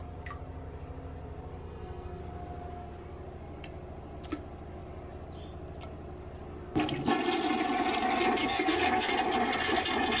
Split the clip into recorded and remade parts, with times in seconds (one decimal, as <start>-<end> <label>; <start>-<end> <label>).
0.0-1.6 recorded; 1.6-2.2 remade; 2.2-8.4 recorded; 8.4-9.1 remade; 9.1-10.2 recorded